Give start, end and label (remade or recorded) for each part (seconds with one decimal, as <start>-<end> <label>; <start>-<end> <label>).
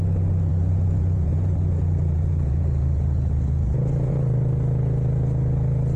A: 0.0-0.5 recorded; 0.5-4.1 remade; 4.1-6.0 recorded